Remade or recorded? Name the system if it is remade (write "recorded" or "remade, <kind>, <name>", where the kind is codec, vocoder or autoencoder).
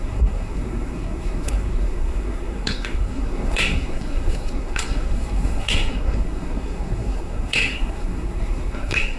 remade, codec, SNAC